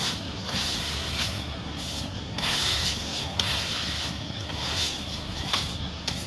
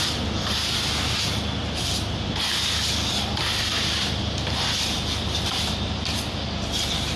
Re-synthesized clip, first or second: first